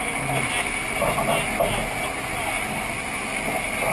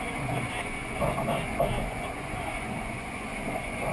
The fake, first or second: second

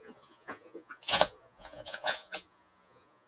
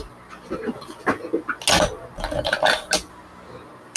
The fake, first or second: first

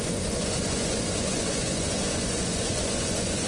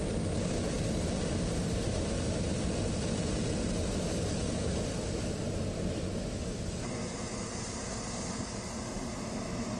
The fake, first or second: first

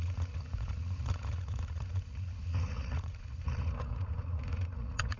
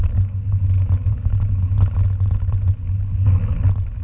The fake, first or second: first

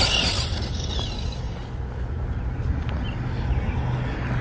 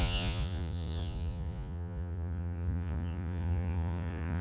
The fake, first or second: second